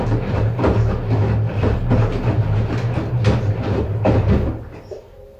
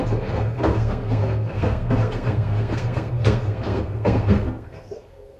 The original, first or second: first